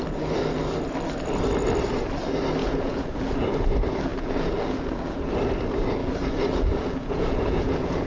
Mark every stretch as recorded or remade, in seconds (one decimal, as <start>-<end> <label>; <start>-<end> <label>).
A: 0.0-2.6 recorded; 2.6-3.4 remade; 3.4-4.1 recorded; 4.1-5.3 remade; 5.3-6.0 recorded; 6.0-8.1 remade